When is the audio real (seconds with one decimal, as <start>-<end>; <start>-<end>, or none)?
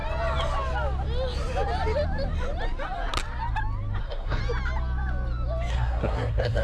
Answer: 0.0-4.0; 4.4-5.7